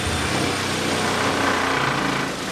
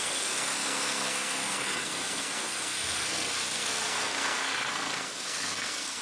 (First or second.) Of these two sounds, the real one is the first